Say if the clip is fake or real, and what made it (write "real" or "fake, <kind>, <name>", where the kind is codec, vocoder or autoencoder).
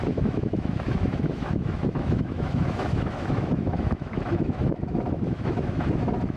fake, autoencoder, DAC-VAE